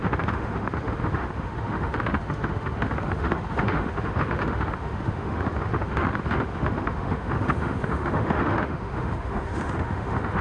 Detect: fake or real fake